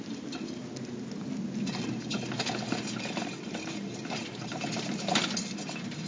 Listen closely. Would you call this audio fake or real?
real